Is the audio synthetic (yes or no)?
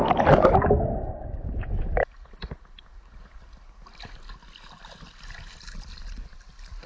no